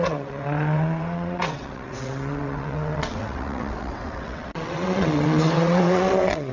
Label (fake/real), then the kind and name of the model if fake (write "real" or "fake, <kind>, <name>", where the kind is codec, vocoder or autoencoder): fake, vocoder, WaveNeXt